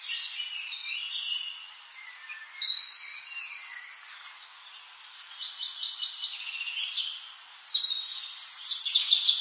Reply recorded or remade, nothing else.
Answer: recorded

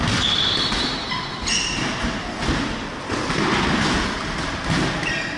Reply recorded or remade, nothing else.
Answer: recorded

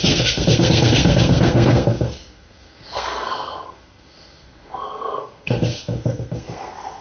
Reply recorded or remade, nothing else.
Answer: remade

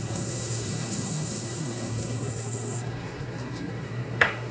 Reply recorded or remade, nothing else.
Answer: remade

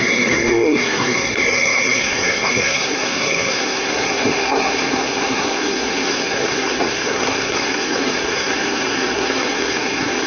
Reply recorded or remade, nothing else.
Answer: remade